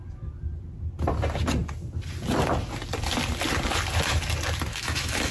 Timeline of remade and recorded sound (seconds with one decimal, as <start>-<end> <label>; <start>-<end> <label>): 0.0-4.7 recorded; 4.7-5.3 remade